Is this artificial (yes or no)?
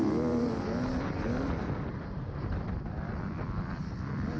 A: no